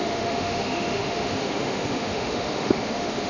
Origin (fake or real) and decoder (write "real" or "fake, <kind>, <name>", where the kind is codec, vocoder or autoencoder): fake, autoencoder, DAC-VAE